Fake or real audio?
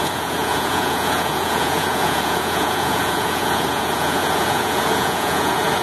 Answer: fake